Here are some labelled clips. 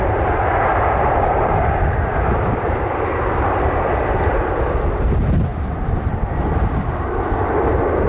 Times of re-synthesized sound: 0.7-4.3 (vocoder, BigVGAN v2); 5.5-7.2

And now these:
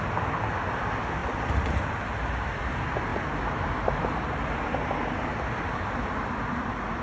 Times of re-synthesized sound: 1.2-2.6 (vocoder, BigVGAN v2)

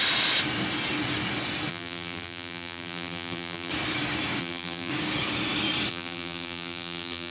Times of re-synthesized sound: 1.7-3.7 (vocoder, BigVGAN v2); 4.4-4.9; 5.9-7.3

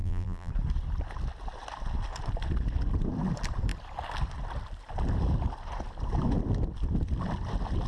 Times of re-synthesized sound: 0.0-0.5 (vocoder, BigVGAN v2)